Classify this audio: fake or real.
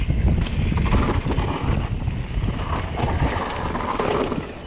real